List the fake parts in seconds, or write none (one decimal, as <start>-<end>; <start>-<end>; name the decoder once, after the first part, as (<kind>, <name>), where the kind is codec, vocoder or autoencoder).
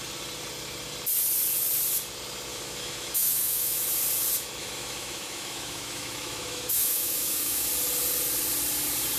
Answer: 2.5-3.8 (autoencoder, DAC-VAE); 4.6-7.7